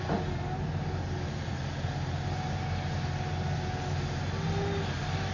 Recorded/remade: recorded